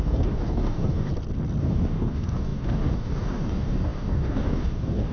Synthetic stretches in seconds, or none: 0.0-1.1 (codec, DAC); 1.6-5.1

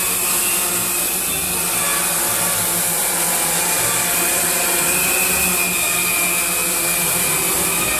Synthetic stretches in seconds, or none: none

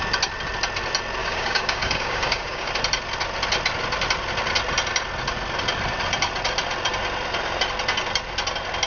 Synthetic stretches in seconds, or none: 1.2-2.7 (codec, DAC)

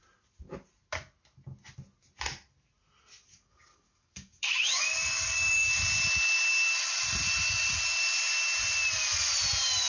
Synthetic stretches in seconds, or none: 3.3-5.7 (codec, DAC)

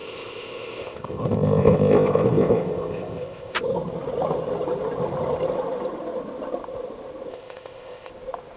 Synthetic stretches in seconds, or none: 0.0-3.6 (codec, ZipCodec); 7.3-8.1

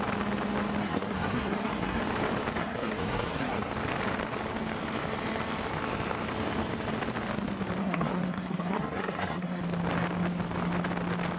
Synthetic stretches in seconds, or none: 0.8-2.0 (codec, SNAC); 2.6-3.7; 7.8-9.6

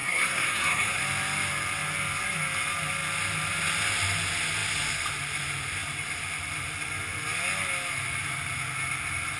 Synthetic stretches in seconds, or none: 0.0-1.0 (codec, SNAC)

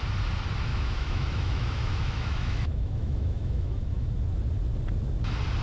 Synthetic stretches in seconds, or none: 0.7-4.1 (autoencoder, DAC-VAE)